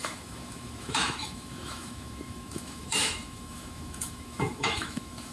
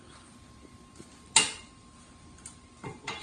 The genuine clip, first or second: second